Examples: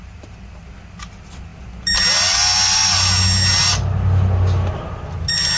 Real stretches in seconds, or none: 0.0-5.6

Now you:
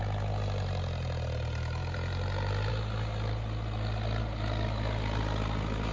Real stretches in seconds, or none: 0.0-1.8; 2.7-5.9

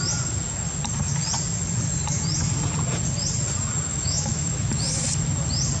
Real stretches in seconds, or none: 0.0-3.9; 4.7-5.8

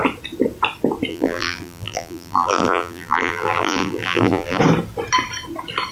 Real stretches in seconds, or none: 0.0-1.1; 4.6-5.9

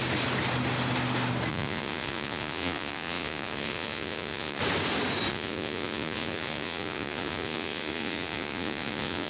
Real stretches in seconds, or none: 0.0-1.5; 4.6-5.3